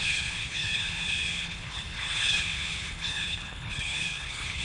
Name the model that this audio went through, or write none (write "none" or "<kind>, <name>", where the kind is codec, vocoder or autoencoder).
codec, HILCodec